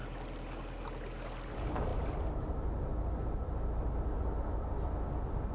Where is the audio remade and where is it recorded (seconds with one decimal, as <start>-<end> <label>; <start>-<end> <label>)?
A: 0.0-5.5 recorded